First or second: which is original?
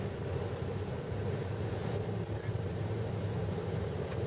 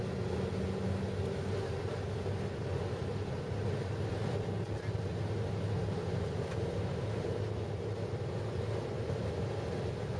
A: second